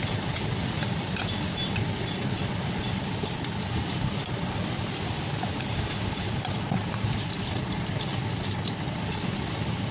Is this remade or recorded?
recorded